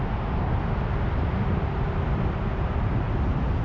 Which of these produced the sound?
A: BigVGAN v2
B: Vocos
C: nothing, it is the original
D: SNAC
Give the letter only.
A